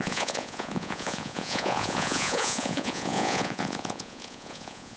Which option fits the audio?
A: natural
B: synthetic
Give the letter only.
B